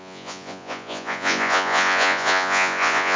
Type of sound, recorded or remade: remade